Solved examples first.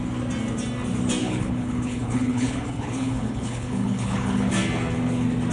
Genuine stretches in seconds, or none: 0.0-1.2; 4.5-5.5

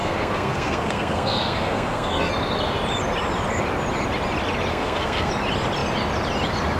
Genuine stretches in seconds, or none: 2.3-4.7; 5.3-6.8

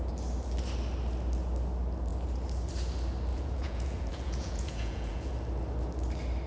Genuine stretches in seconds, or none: 0.0-3.3; 5.3-6.5

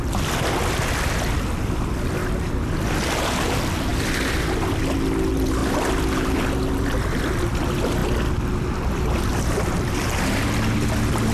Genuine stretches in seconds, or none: 0.0-11.3

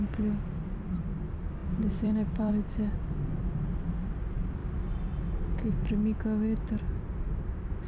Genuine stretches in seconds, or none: 0.0-1.6; 2.5-7.9